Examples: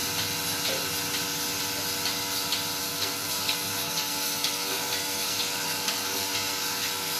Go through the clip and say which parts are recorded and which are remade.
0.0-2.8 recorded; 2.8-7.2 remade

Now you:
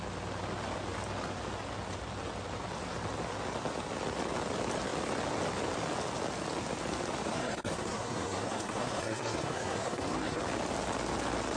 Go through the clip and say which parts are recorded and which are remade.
0.0-7.3 recorded; 7.3-10.4 remade; 10.4-11.6 recorded

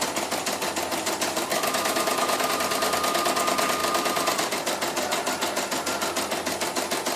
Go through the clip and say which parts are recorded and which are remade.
0.0-1.5 recorded; 1.5-2.5 remade; 2.5-7.2 recorded

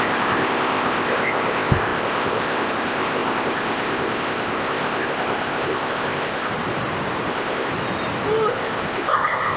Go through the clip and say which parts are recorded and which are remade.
0.0-6.5 remade; 6.5-7.3 recorded; 7.3-7.7 remade; 7.7-8.5 recorded; 8.5-9.6 remade

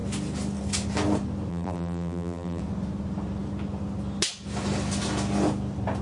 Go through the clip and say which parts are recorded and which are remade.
0.0-1.5 recorded; 1.5-2.6 remade; 2.6-6.0 recorded

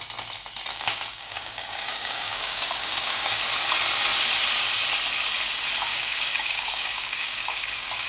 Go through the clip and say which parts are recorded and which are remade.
0.0-0.7 recorded; 0.7-3.4 remade; 3.4-5.9 recorded; 5.9-8.1 remade

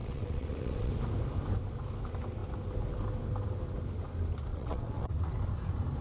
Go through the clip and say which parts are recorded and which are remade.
0.0-0.9 remade; 0.9-4.5 recorded; 4.5-5.3 remade; 5.3-6.0 recorded